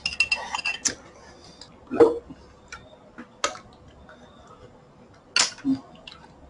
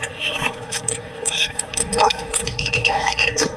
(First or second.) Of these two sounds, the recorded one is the first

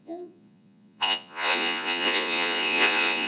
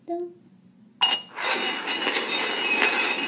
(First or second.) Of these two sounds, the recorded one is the second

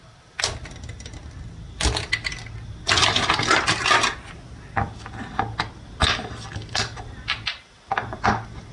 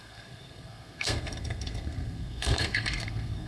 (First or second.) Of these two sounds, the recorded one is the first